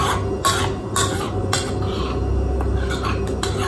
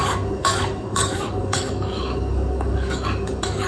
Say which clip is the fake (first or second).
second